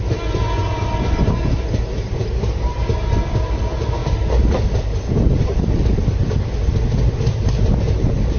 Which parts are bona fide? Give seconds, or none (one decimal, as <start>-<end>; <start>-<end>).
0.0-8.4